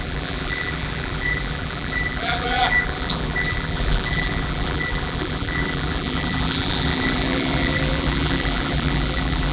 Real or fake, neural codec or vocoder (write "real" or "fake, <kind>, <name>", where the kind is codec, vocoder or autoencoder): fake, vocoder, BigVGAN v2